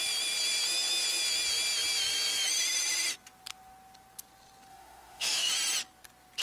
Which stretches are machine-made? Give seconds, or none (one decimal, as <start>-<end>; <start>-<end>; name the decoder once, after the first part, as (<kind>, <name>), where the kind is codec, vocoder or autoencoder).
4.7-5.5 (autoencoder, DAC-VAE)